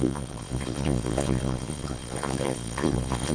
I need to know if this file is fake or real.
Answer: fake